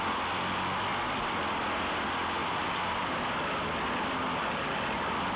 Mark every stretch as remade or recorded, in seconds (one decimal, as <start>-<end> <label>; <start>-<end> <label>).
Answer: 0.0-2.4 recorded; 2.4-3.2 remade; 3.2-4.4 recorded; 4.4-5.0 remade; 5.0-5.4 recorded